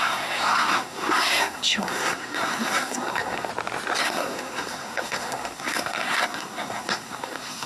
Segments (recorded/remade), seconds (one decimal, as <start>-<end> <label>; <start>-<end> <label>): 0.0-3.5 remade; 3.5-4.0 recorded; 4.0-7.7 remade